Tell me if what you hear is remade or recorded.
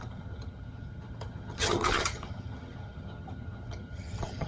remade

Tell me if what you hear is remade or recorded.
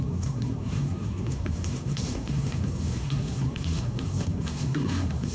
remade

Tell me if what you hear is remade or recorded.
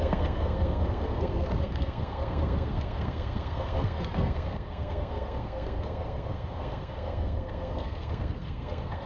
remade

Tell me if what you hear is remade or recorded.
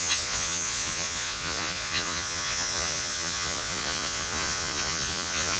remade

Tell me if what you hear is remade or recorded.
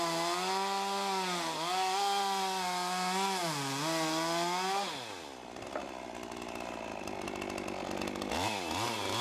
recorded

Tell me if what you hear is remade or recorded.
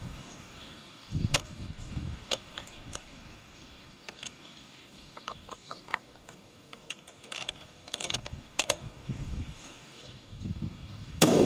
remade